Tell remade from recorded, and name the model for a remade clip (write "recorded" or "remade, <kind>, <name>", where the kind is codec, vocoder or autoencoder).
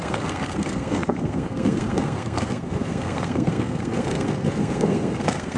remade, codec, SNAC